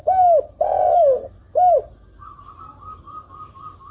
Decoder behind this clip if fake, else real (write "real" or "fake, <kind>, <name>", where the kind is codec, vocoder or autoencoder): real